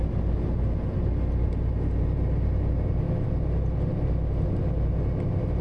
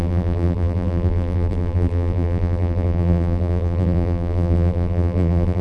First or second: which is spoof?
second